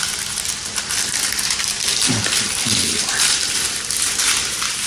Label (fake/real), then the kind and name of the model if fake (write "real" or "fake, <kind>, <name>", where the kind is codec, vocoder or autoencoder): fake, vocoder, BigVGAN v2